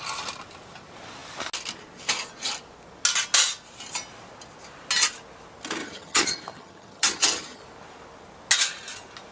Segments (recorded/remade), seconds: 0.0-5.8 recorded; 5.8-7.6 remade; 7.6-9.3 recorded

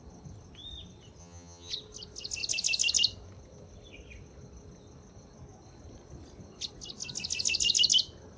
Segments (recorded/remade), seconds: 0.0-1.2 recorded; 1.2-1.7 remade; 1.7-8.4 recorded

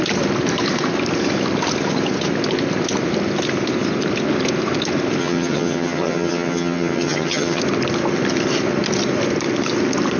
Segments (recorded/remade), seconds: 0.0-5.2 recorded; 5.2-7.6 remade; 7.6-10.2 recorded

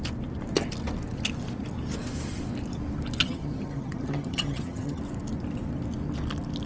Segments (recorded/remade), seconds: 0.0-3.2 recorded; 3.2-5.0 remade; 5.0-6.7 recorded

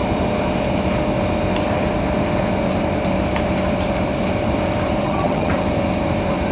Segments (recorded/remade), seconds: 0.0-5.0 recorded; 5.0-5.5 remade; 5.5-6.5 recorded

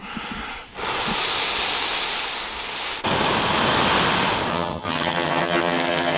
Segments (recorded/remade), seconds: 0.0-4.5 recorded; 4.5-6.2 remade

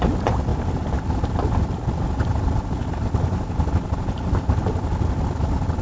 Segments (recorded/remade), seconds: 0.0-5.8 recorded